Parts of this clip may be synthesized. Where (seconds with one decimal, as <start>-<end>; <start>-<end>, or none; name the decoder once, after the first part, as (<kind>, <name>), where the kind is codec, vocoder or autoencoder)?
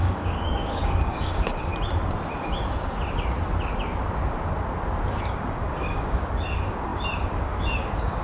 0.0-1.7 (codec, DAC); 5.2-8.2